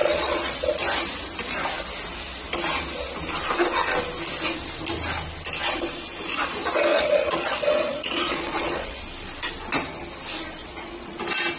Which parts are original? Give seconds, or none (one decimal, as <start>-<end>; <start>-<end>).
0.7-6.9; 9.0-10.6; 11.2-11.6